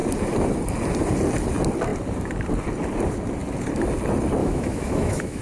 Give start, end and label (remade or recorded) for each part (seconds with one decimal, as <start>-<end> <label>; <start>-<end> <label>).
0.0-4.4 recorded; 4.4-5.4 remade